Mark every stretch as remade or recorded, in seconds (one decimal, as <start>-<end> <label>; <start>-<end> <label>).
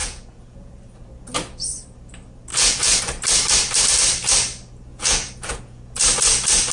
0.0-0.7 remade; 0.7-2.5 recorded; 2.5-3.0 remade; 3.0-4.9 recorded; 4.9-5.8 remade; 5.8-6.7 recorded